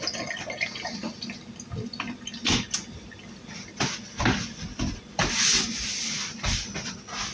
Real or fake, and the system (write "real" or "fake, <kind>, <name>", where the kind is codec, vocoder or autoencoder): real